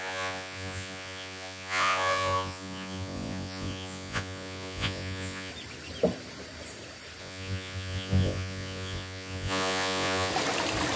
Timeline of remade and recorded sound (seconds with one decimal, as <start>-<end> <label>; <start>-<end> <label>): 0.0-5.5 remade; 5.5-7.2 recorded; 7.2-10.3 remade; 10.3-11.0 recorded